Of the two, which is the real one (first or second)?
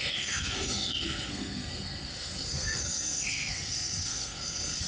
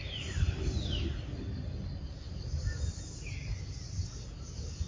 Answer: second